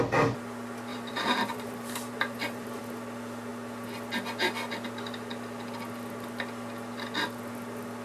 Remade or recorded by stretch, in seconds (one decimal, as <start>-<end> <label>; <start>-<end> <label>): 0.0-0.9 recorded; 0.9-2.8 remade; 2.8-8.0 recorded

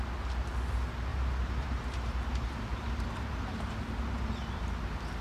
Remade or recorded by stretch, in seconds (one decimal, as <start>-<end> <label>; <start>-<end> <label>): 0.0-1.1 recorded; 1.1-4.2 remade; 4.2-5.2 recorded

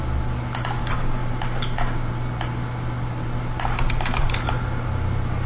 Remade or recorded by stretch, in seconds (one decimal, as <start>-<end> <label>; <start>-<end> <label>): 0.0-5.5 recorded

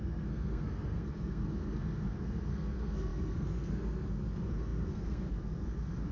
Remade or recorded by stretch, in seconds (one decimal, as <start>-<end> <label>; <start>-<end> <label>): 0.0-6.1 remade